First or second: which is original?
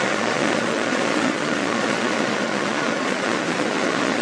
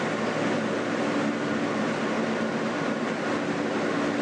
second